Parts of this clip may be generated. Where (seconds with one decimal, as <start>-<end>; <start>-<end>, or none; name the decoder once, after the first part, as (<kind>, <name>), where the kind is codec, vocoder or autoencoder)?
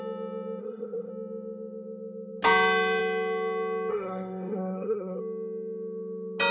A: 0.6-1.1 (codec, SNAC); 3.9-5.2